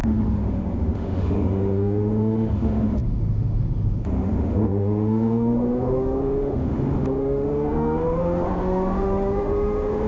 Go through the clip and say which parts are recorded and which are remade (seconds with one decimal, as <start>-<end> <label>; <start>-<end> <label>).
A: 0.0-10.1 remade